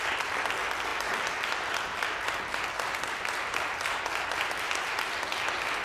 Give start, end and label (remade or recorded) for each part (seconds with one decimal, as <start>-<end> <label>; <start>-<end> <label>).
0.0-5.8 recorded

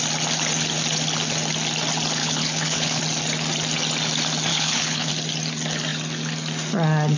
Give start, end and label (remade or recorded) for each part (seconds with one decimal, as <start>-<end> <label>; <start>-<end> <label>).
0.0-2.2 recorded; 2.2-3.0 remade; 3.0-4.5 recorded; 4.5-5.1 remade; 5.1-7.2 recorded

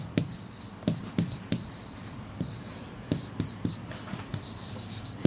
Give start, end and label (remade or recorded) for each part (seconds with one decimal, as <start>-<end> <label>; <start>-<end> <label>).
0.0-0.4 remade; 0.4-1.0 recorded; 1.0-5.3 remade

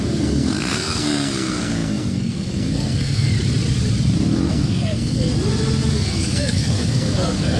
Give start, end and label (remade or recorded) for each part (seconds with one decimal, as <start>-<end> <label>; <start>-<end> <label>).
0.0-3.3 remade; 3.3-4.5 recorded; 4.5-5.3 remade; 5.3-5.9 recorded; 5.9-7.6 remade

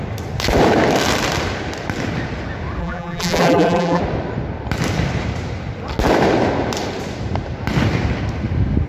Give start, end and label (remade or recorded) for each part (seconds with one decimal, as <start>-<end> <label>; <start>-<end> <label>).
0.0-2.8 recorded; 2.8-4.0 remade; 4.0-8.9 recorded

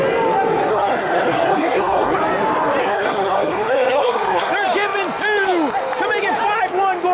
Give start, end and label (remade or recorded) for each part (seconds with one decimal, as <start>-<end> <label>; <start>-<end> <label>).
0.0-0.7 recorded; 0.7-2.2 remade; 2.2-2.8 recorded; 2.8-4.5 remade; 4.5-7.1 recorded